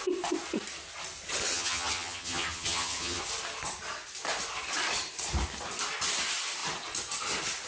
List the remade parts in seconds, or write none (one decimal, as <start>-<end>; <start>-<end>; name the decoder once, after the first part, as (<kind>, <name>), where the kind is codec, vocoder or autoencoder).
1.5-3.2 (vocoder, HiFi-GAN)